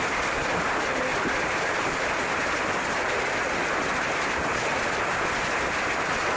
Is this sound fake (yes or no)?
no